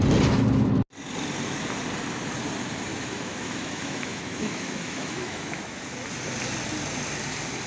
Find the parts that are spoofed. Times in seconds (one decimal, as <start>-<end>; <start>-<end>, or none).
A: 2.9-5.8